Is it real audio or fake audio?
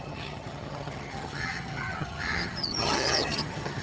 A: fake